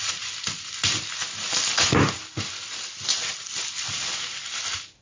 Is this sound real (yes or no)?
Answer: yes